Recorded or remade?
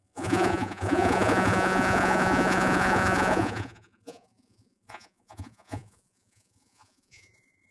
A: remade